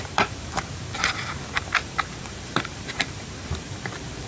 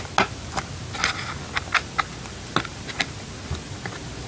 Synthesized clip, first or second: first